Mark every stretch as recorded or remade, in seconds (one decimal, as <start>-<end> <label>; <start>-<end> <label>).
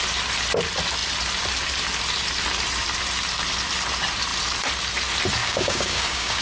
0.0-5.4 recorded; 5.4-6.4 remade